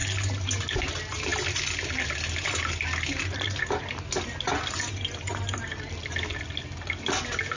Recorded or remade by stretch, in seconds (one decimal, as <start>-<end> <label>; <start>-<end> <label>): 0.0-7.6 recorded